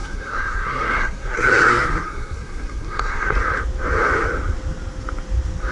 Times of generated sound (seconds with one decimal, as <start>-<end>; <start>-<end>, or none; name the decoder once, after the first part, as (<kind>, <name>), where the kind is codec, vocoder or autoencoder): 0.0-3.4 (codec, SNAC)